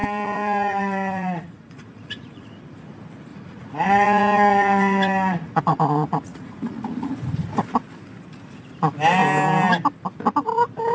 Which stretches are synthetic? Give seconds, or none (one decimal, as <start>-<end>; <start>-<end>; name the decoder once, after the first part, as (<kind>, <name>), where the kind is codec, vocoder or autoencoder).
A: 0.0-2.5 (vocoder, Vocos); 3.3-7.1